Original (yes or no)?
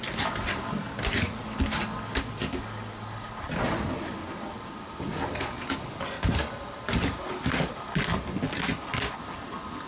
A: yes